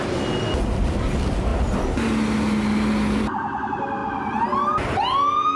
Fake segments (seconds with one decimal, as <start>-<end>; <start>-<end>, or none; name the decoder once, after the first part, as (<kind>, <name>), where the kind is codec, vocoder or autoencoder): none